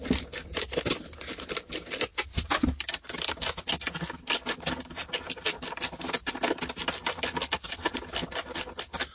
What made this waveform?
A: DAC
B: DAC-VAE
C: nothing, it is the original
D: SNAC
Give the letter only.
C